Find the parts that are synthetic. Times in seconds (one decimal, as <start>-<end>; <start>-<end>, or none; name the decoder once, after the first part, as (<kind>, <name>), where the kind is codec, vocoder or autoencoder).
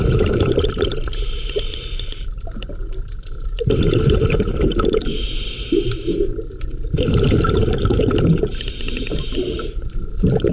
0.0-10.5 (vocoder, BigVGAN v2)